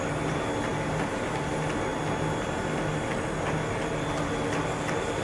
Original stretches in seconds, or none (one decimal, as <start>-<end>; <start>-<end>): 0.0-0.7; 1.5-5.2